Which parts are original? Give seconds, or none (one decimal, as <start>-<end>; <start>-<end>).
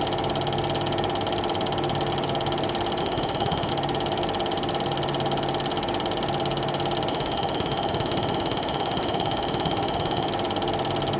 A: 0.0-3.0; 3.7-7.1; 10.3-11.2